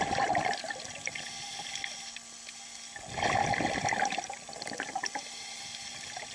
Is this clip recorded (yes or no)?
yes